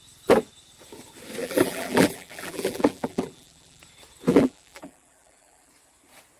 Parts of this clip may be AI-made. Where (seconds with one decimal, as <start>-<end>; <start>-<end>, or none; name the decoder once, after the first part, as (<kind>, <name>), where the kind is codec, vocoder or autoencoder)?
1.4-3.8 (vocoder, BigVGAN v2); 4.3-5.7